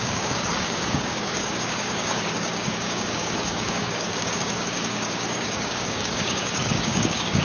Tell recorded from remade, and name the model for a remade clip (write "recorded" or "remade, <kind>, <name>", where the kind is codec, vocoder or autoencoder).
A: remade, codec, DAC